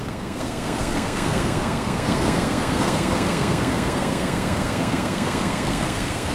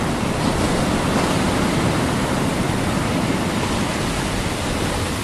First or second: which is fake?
first